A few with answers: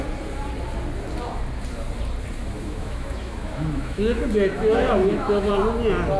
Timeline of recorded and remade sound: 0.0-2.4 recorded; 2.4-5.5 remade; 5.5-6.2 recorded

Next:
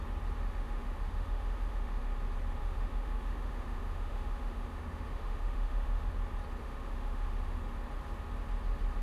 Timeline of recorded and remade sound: 0.0-0.4 recorded; 0.4-2.0 remade; 2.0-2.6 recorded; 2.6-6.1 remade; 6.1-6.6 recorded; 6.6-7.6 remade; 7.6-9.0 recorded

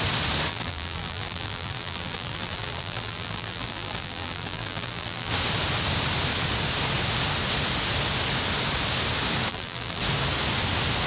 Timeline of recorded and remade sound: 0.0-0.5 recorded; 0.5-5.3 remade; 5.3-9.5 recorded; 9.5-10.0 remade; 10.0-11.1 recorded

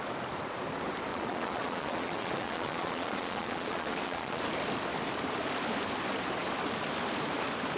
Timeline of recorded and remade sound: 0.0-1.1 recorded; 1.1-4.4 remade; 4.4-7.8 recorded

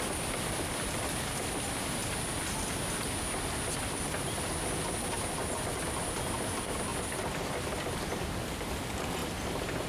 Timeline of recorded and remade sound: 0.0-2.0 remade; 2.0-5.3 recorded; 5.3-9.9 remade

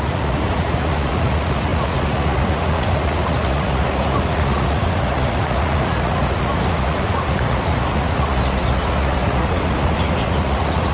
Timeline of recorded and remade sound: 0.0-10.9 remade

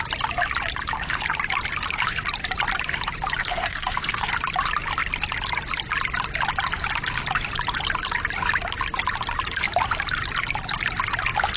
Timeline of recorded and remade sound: 0.0-3.4 recorded; 3.4-4.3 remade; 4.3-11.6 recorded